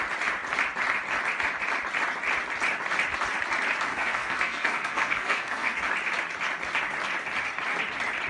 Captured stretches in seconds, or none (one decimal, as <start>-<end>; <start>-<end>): 0.0-3.9; 5.8-8.3